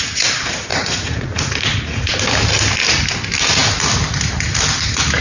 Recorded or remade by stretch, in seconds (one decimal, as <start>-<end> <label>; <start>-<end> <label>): 0.0-0.7 recorded; 0.7-2.1 remade; 2.1-5.2 recorded